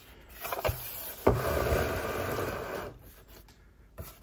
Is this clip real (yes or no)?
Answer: no